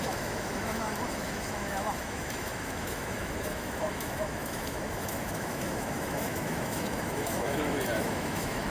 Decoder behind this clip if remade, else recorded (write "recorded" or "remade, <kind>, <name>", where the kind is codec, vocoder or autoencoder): remade, autoencoder, DAC-VAE